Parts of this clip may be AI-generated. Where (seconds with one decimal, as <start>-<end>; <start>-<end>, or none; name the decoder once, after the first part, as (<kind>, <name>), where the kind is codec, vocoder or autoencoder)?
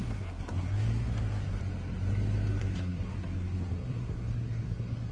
0.0-1.6 (codec, SNAC); 2.6-5.1